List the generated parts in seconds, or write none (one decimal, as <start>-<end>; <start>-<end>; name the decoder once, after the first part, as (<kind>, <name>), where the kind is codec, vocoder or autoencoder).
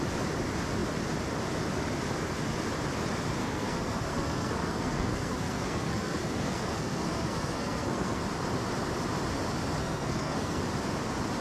3.4-8.2 (codec, SNAC); 9.8-10.6